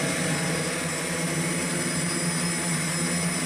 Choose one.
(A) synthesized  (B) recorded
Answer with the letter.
B